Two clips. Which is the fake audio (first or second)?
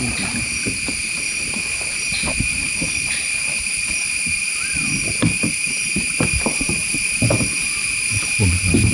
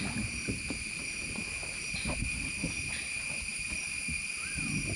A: first